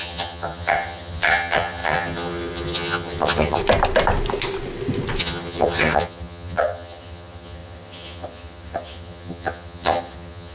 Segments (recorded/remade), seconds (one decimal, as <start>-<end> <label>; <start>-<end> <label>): 0.0-3.6 remade; 3.6-5.2 recorded; 5.2-10.5 remade